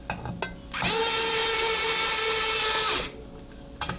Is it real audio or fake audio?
real